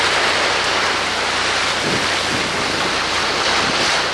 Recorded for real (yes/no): yes